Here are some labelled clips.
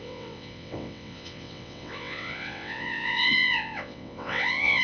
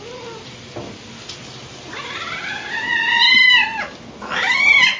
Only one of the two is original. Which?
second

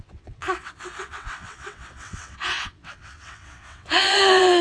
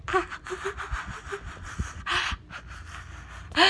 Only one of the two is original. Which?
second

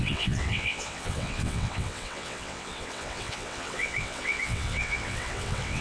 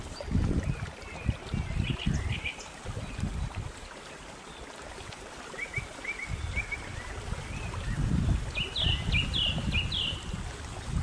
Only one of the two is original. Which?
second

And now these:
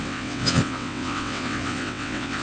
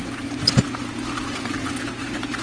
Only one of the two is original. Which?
second